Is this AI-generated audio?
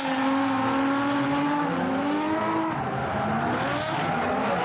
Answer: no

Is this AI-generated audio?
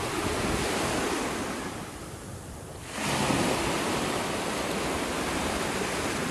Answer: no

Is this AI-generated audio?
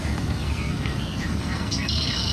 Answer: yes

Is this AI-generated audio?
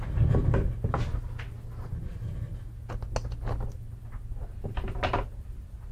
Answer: no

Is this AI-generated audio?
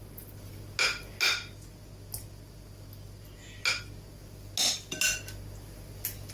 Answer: no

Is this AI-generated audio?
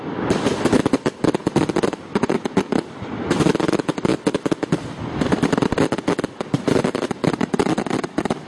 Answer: no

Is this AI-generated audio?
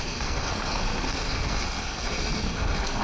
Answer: yes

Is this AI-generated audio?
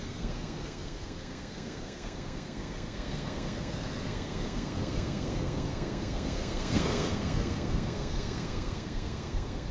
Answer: yes